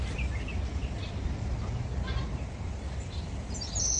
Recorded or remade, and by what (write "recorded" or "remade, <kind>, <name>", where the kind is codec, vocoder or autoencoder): recorded